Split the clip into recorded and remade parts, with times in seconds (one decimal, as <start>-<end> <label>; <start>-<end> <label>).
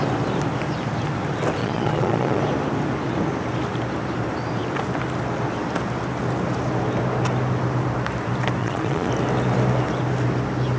0.0-1.6 recorded; 1.6-2.4 remade; 2.4-8.6 recorded; 8.6-9.1 remade; 9.1-10.8 recorded